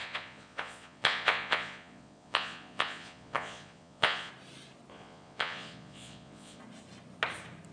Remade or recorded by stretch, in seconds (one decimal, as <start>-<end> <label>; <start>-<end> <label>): 0.0-4.3 remade; 4.3-4.9 recorded; 4.9-6.6 remade; 6.6-7.7 recorded